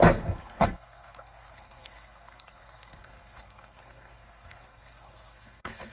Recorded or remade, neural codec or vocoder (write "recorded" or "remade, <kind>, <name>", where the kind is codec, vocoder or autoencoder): remade, codec, SNAC